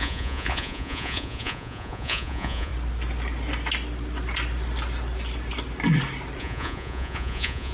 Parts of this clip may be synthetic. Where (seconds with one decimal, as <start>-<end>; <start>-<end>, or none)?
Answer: 0.0-2.7; 6.4-7.7